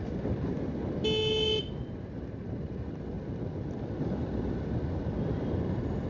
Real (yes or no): yes